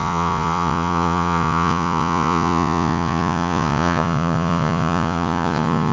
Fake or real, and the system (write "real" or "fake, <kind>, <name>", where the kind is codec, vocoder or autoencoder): fake, vocoder, Vocos